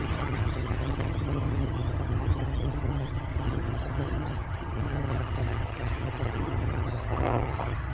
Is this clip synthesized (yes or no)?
yes